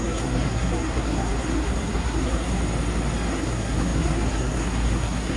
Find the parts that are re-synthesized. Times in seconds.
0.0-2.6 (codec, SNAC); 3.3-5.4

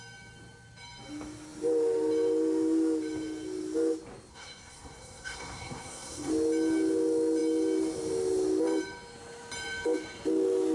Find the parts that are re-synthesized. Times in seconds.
4.3-6.3 (codec, SNAC)